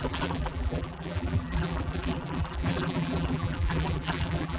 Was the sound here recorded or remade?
remade